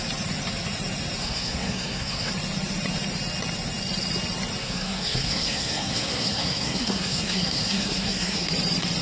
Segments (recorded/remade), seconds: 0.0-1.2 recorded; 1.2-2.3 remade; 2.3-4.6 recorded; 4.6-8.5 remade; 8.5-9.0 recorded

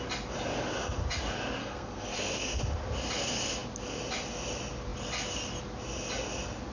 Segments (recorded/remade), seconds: 0.0-1.6 recorded; 1.6-2.6 remade; 2.6-6.7 recorded

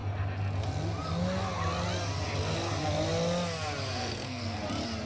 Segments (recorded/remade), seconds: 0.0-4.0 recorded; 4.0-4.6 remade; 4.6-5.1 recorded

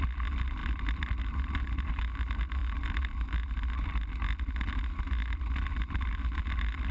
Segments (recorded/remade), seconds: 0.0-6.9 recorded

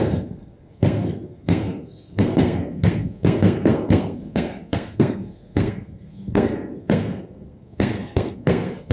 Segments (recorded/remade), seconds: 0.0-8.9 remade

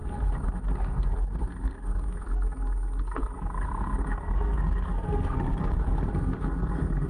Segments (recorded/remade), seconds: 0.0-7.1 remade

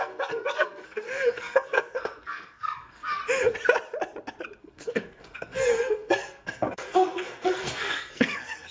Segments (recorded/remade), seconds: 0.0-3.2 remade; 3.2-4.6 recorded; 4.6-8.7 remade

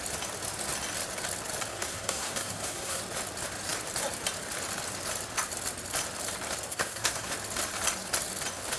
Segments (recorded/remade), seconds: 0.0-1.7 recorded; 1.7-3.0 remade; 3.0-6.7 recorded; 6.7-7.3 remade; 7.3-8.8 recorded